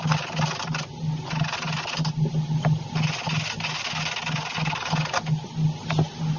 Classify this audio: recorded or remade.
recorded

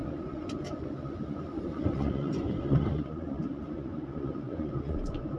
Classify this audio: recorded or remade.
remade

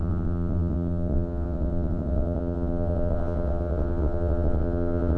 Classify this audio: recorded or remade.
remade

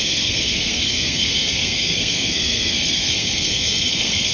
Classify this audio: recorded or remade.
remade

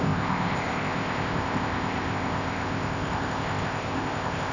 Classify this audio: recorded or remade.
remade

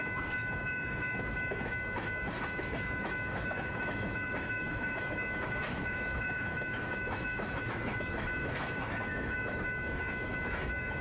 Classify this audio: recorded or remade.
remade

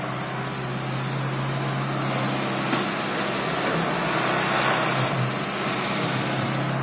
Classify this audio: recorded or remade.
recorded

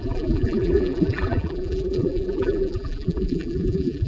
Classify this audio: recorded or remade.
remade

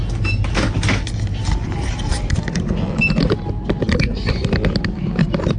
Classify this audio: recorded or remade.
recorded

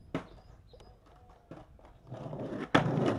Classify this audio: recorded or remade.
recorded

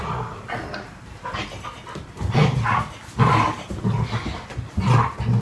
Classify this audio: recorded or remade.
recorded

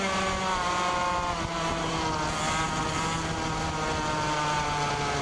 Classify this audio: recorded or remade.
recorded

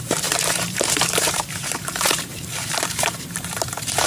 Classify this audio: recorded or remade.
remade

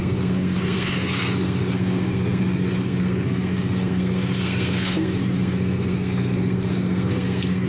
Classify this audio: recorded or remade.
remade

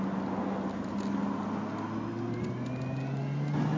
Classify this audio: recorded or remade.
recorded